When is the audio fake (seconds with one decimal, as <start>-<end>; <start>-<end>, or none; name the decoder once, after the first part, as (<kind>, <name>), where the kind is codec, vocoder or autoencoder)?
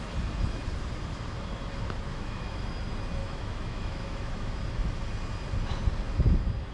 2.1-2.7 (autoencoder, DAC-VAE); 3.2-4.5